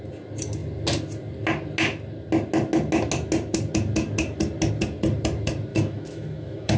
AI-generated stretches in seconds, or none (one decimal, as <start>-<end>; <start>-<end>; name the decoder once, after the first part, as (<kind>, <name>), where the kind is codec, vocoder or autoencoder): 5.7-6.8 (autoencoder, DAC-VAE)